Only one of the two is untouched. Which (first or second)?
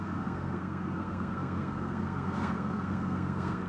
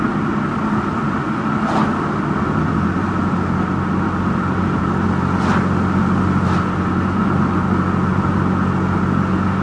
second